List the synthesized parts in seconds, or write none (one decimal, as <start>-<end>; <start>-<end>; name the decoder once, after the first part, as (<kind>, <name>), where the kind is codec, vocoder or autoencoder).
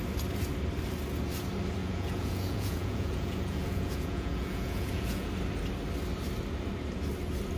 1.8-5.3 (vocoder, Vocos)